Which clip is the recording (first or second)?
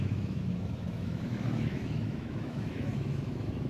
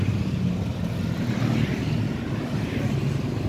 second